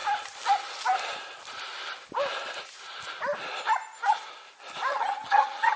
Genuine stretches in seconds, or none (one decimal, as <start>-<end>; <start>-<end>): 0.0-4.9